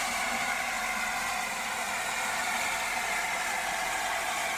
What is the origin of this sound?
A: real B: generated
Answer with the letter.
A